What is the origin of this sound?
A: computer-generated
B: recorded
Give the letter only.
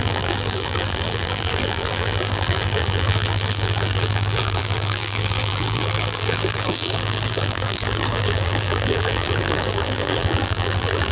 A